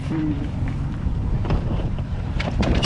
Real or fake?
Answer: fake